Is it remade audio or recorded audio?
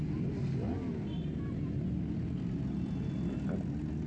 recorded